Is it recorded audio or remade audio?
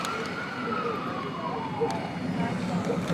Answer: recorded